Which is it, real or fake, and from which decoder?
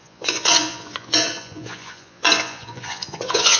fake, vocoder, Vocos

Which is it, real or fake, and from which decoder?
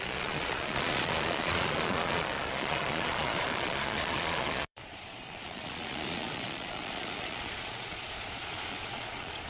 fake, vocoder, Vocos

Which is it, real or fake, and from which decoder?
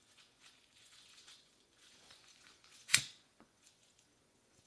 fake, vocoder, Vocos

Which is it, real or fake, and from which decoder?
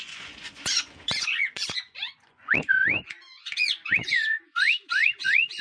fake, vocoder, Vocos